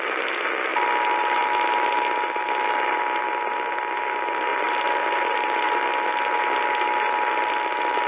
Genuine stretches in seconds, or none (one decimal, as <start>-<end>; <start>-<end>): 0.0-8.1